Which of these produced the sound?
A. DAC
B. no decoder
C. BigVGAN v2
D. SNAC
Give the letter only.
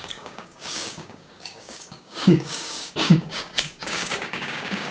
A